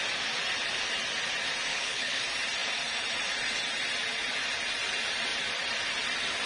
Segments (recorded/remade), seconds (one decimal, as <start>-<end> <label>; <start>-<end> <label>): 0.0-1.7 recorded; 1.7-2.2 remade; 2.2-6.5 recorded